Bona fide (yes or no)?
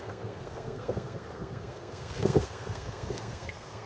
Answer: no